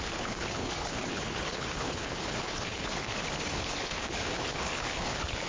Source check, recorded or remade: remade